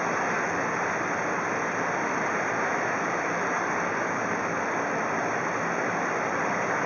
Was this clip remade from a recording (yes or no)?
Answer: no